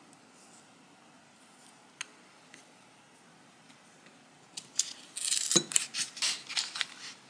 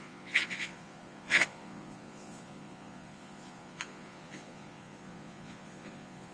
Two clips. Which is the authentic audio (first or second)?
first